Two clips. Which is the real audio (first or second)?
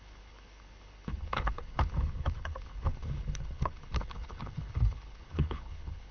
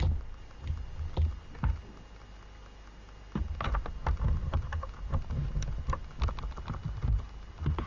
second